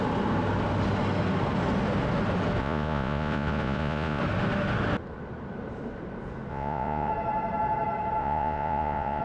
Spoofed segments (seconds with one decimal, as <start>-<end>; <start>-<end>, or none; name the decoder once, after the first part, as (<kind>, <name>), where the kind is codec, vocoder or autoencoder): 2.6-4.2 (vocoder, Vocos); 6.5-7.1; 8.2-9.2